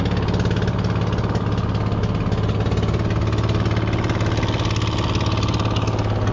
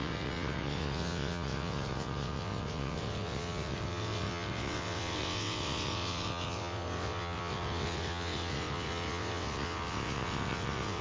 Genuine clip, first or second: first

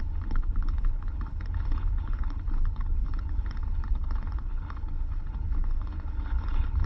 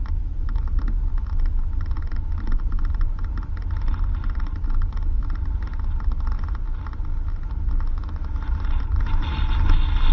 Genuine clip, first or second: second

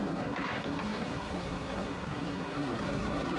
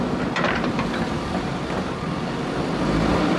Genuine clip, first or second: second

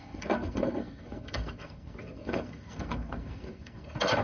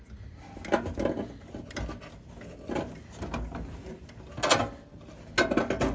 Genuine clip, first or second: second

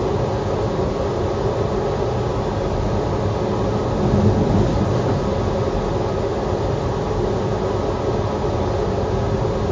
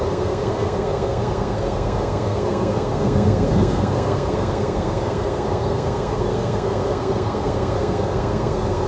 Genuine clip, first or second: first